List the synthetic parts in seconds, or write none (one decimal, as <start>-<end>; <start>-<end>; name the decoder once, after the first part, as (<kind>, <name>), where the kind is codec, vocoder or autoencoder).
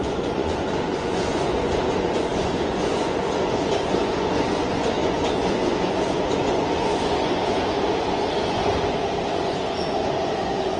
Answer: 0.0-10.8 (vocoder, Vocos)